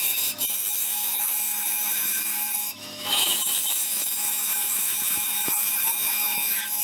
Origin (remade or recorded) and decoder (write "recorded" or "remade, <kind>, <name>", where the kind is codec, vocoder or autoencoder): remade, autoencoder, DAC-VAE